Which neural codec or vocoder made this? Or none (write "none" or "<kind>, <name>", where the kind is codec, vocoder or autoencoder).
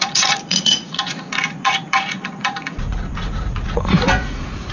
vocoder, Vocos